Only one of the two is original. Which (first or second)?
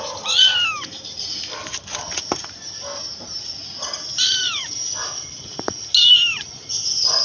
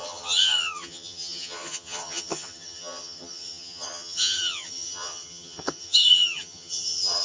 first